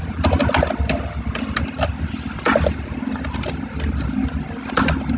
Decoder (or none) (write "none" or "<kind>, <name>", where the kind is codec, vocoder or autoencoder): none